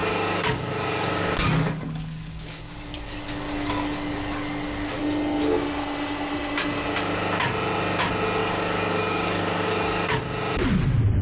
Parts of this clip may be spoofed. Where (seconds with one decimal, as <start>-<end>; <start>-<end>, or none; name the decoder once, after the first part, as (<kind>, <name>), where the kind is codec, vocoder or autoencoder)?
0.0-5.0 (codec, DAC); 8.4-10.2